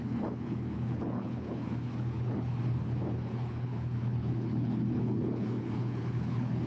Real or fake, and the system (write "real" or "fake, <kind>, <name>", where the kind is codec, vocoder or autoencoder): fake, codec, HILCodec